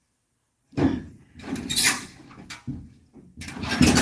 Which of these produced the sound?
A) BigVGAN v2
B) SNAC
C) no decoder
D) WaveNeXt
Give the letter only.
C